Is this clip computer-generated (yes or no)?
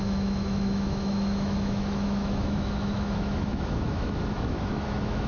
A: yes